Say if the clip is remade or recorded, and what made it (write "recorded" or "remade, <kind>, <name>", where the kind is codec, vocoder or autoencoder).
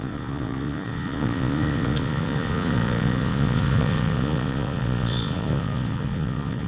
remade, vocoder, Vocos